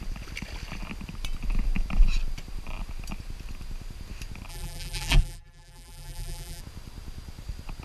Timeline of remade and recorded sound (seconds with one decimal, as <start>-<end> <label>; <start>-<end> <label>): 0.0-4.5 recorded; 4.5-6.6 remade; 6.6-7.8 recorded